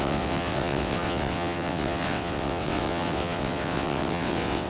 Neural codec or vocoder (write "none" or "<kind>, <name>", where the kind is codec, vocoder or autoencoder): vocoder, WaveNeXt